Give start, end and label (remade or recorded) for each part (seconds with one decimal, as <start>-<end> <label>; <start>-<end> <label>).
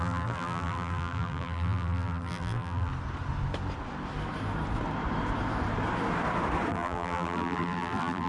0.0-2.9 remade; 2.9-6.7 recorded; 6.7-8.3 remade